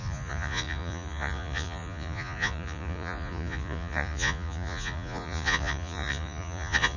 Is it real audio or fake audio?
fake